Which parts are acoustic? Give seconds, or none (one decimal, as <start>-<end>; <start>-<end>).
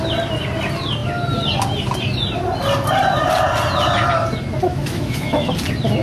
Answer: 0.0-4.7; 5.5-6.0